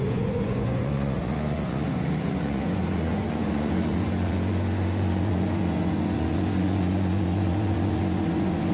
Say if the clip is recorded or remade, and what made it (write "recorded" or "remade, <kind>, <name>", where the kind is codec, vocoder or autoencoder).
remade, vocoder, Vocos